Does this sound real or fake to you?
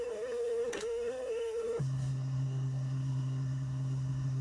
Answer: fake